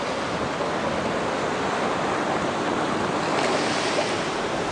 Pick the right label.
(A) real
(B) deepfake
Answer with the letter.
A